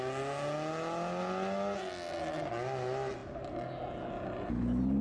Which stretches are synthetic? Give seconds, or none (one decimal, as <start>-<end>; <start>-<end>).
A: none